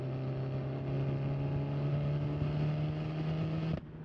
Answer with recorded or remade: recorded